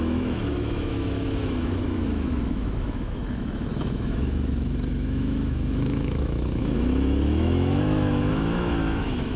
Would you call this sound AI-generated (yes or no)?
yes